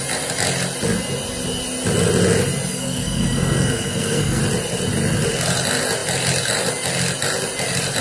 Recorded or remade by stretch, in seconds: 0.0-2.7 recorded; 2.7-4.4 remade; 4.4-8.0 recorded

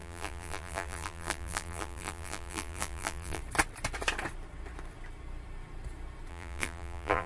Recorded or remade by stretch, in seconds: 0.0-3.4 remade; 3.4-6.3 recorded; 6.3-7.3 remade

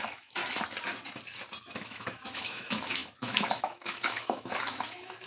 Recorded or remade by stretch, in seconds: 0.0-0.4 remade; 0.4-1.6 recorded; 1.6-5.3 remade

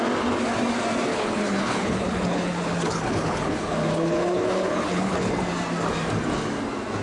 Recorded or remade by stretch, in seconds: 0.0-1.1 recorded; 1.1-5.3 remade; 5.3-7.0 recorded

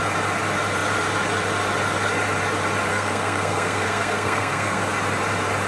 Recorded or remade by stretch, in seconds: 0.0-2.9 recorded; 2.9-4.8 remade; 4.8-5.7 recorded